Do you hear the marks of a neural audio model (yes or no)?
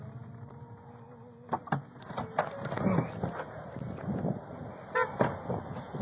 no